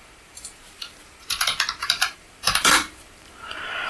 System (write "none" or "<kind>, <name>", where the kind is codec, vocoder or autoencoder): vocoder, BigVGAN v2